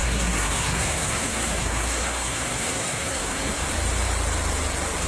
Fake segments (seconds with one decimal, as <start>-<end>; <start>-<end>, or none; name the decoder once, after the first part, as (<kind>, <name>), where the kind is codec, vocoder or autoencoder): 0.0-3.6 (codec, SNAC)